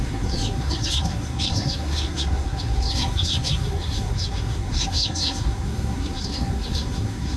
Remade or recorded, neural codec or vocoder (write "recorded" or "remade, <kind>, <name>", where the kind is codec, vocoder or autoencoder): remade, codec, SNAC